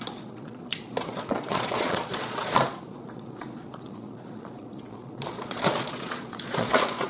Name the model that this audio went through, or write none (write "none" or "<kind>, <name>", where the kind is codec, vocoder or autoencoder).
vocoder, Vocos